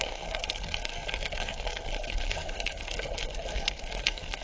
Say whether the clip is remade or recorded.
remade